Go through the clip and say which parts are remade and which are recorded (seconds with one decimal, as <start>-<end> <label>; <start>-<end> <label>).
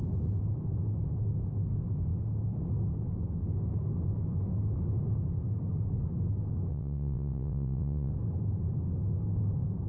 0.0-6.7 recorded; 6.7-8.1 remade; 8.1-9.9 recorded